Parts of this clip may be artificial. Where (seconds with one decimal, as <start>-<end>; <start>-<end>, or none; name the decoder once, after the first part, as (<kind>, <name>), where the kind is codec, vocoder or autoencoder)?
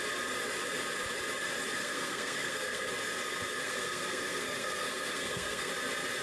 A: 1.8-2.9 (codec, SNAC); 3.6-5.7